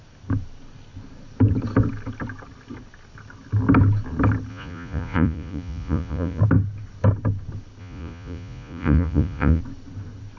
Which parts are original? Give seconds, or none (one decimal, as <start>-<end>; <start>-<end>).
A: 0.0-4.5; 6.4-7.8; 9.6-10.4